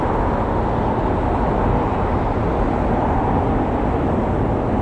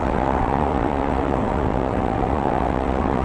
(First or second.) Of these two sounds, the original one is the first